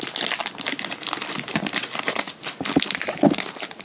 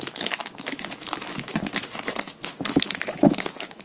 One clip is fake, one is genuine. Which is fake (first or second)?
second